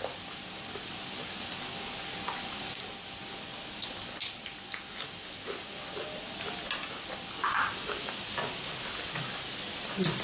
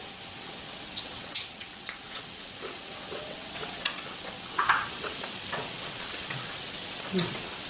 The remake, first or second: second